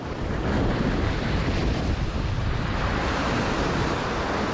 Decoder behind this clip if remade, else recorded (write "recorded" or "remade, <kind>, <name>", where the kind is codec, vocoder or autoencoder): remade, vocoder, BigVGAN v2